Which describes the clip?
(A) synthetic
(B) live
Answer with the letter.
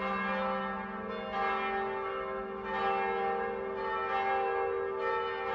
B